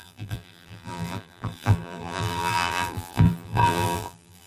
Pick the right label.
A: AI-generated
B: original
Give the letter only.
A